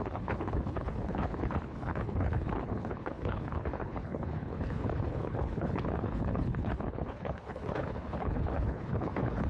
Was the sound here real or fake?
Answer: fake